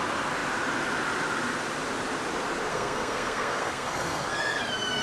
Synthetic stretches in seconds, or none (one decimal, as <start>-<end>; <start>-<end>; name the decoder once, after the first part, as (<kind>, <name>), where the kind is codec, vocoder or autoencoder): 2.7-4.6 (codec, SNAC)